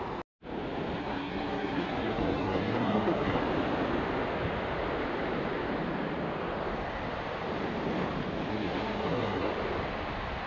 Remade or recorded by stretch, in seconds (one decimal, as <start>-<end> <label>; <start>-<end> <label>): 0.0-1.0 recorded; 1.0-3.4 remade; 3.4-8.5 recorded; 8.5-9.5 remade; 9.5-10.5 recorded